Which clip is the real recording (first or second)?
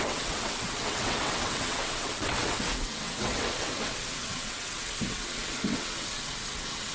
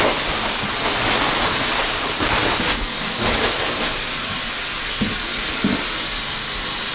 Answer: second